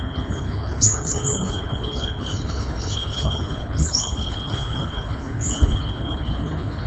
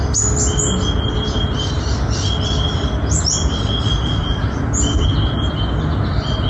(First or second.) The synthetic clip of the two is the first